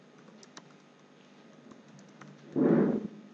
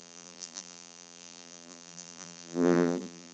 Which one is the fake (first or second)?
second